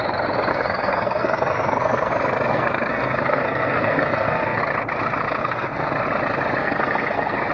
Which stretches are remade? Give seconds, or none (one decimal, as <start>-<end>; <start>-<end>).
0.5-2.1; 2.5-4.6; 5.4-5.9; 6.6-7.5